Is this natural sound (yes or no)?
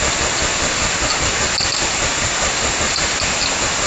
yes